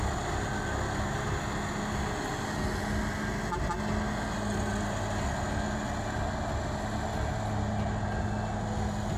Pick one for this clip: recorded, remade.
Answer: recorded